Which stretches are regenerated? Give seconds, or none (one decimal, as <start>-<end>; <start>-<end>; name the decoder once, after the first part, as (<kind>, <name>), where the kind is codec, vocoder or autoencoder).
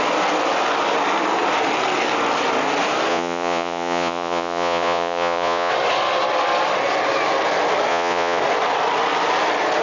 3.1-5.7 (vocoder, Vocos); 7.9-8.4